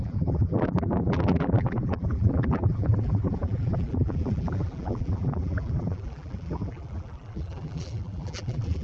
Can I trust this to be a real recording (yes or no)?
no